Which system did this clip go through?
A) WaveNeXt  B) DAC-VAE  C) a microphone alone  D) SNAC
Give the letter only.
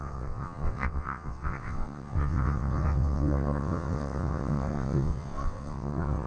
A